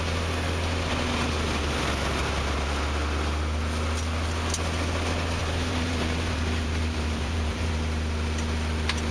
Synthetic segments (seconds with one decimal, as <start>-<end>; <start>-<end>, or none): 5.4-7.7